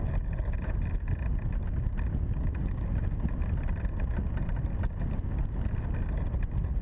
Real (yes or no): yes